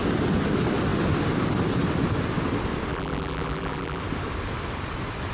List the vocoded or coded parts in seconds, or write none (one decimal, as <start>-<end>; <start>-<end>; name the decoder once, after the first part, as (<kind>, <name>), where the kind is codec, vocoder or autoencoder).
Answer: 2.9-4.0 (vocoder, BigVGAN v2)